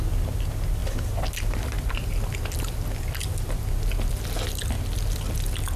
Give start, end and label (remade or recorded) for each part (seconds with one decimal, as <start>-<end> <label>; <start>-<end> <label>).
0.0-0.8 recorded; 0.8-4.3 remade; 4.3-5.8 recorded

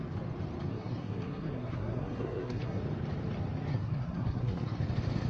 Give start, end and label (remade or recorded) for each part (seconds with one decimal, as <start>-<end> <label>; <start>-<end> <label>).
0.0-0.7 recorded; 0.7-2.8 remade; 2.8-3.7 recorded; 3.7-4.8 remade; 4.8-5.3 recorded

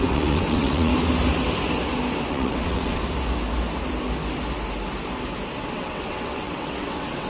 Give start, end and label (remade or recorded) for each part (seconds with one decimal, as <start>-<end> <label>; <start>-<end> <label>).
0.0-0.9 remade; 0.9-2.3 recorded; 2.3-3.0 remade; 3.0-5.7 recorded; 5.7-7.3 remade

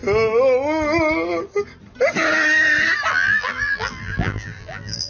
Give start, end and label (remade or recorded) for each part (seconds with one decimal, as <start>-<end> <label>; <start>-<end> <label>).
0.0-3.1 recorded; 3.1-5.1 remade

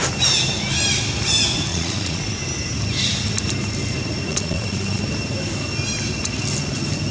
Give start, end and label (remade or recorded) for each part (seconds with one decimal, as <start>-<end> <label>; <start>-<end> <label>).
0.0-1.7 recorded; 1.7-2.2 remade; 2.2-4.3 recorded; 4.3-5.0 remade; 5.0-7.1 recorded

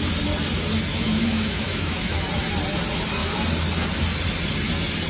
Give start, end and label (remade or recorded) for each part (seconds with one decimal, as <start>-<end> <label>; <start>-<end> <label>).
0.0-0.9 recorded; 0.9-2.3 remade; 2.3-5.1 recorded

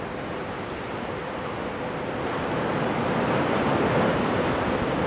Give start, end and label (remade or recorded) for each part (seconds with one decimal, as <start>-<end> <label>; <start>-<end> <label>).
0.0-5.1 recorded

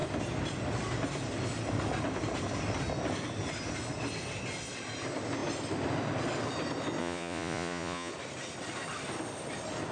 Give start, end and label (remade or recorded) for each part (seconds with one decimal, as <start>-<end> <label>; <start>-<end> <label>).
0.0-7.0 recorded; 7.0-8.1 remade; 8.1-9.9 recorded